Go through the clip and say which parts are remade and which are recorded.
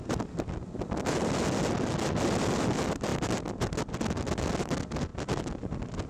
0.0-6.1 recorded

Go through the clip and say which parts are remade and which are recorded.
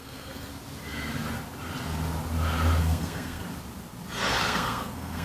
0.0-0.5 remade; 0.5-2.8 recorded; 2.8-3.4 remade; 3.4-4.4 recorded; 4.4-5.2 remade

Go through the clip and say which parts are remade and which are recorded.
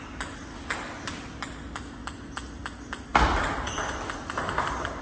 0.0-5.0 recorded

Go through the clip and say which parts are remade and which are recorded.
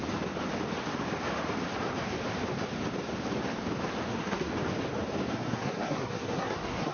0.0-4.1 recorded; 4.1-4.5 remade; 4.5-5.3 recorded; 5.3-6.9 remade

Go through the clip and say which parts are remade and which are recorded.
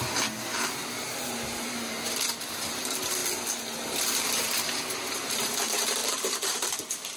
0.0-3.2 remade; 3.2-3.9 recorded; 3.9-7.2 remade